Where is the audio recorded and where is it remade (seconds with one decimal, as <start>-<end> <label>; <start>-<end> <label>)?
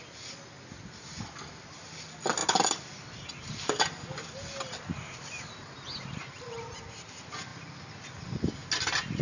0.0-9.2 recorded